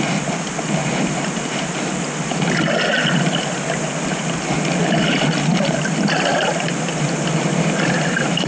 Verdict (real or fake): real